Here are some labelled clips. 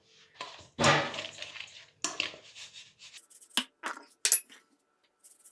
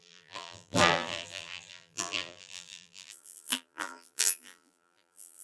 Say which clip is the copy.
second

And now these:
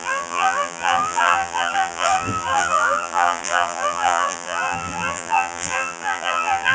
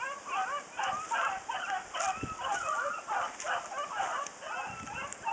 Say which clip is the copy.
first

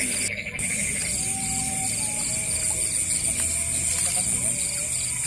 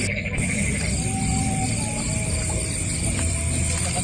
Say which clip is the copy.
second